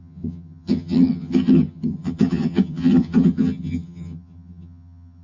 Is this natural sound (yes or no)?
no